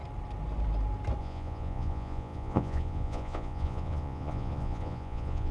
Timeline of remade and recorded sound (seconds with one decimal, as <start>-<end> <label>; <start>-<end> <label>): 0.0-1.2 recorded; 1.2-5.5 remade

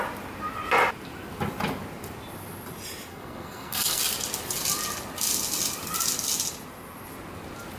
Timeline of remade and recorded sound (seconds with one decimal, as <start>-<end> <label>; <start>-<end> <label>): 0.0-3.1 recorded; 3.1-4.0 remade; 4.0-7.8 recorded

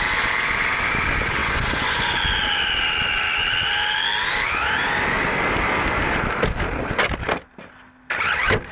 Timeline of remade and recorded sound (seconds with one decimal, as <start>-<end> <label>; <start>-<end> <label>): 0.0-1.4 recorded; 1.4-2.2 remade; 2.2-8.7 recorded

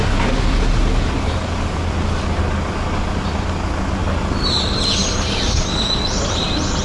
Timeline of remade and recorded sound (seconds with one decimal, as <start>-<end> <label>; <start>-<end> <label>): 0.0-4.0 recorded; 4.0-4.8 remade; 4.8-6.8 recorded

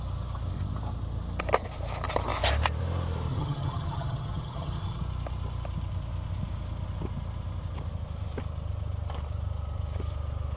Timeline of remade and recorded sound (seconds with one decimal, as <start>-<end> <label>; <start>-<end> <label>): 0.0-3.3 recorded; 3.3-5.0 remade; 5.0-10.6 recorded

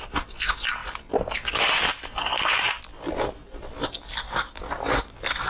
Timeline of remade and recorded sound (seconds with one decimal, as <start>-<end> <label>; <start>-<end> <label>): 0.0-5.5 recorded